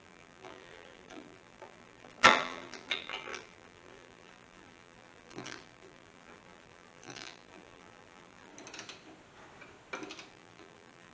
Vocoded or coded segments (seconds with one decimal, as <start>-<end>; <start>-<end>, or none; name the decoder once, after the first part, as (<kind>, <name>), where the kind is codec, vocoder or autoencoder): 0.0-8.5 (vocoder, BigVGAN v2); 10.3-11.1